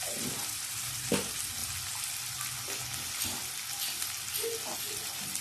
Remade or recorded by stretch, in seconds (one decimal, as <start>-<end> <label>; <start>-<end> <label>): 0.0-1.6 remade; 1.6-4.8 recorded; 4.8-5.4 remade